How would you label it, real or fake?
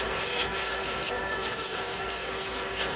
fake